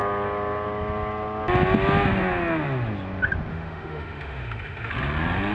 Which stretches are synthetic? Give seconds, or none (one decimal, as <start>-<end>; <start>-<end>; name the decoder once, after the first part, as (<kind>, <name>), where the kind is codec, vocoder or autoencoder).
3.5-4.9 (autoencoder, DAC-VAE)